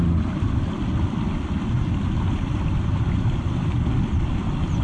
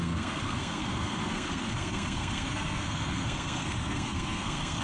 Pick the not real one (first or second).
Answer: second